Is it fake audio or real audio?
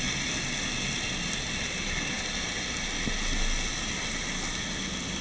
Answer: real